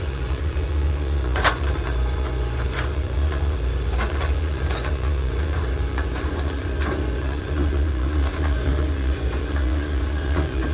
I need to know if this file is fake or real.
fake